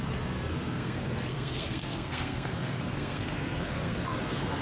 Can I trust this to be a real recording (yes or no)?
no